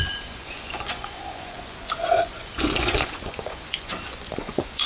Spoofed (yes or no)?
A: yes